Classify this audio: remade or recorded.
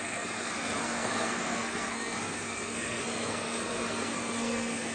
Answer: remade